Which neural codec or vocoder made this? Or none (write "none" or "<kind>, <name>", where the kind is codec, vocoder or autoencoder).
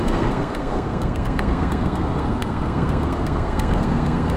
codec, SNAC